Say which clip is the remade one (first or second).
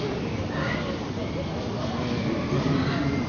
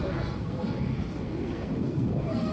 second